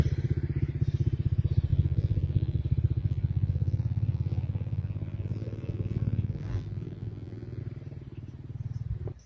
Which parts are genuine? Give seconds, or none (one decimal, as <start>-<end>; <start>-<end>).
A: 0.0-1.7; 2.6-3.0; 7.6-9.3